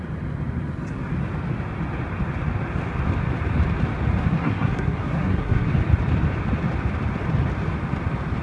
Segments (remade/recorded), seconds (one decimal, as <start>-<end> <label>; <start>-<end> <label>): 0.0-4.2 recorded; 4.2-5.7 remade; 5.7-8.4 recorded